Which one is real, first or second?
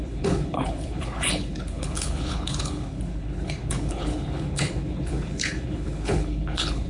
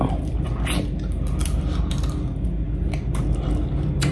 second